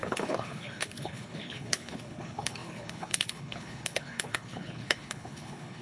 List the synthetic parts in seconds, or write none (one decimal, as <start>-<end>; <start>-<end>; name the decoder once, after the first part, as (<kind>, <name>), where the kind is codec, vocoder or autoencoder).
0.0-5.8 (codec, HILCodec)